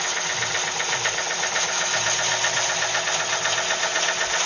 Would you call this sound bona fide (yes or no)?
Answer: yes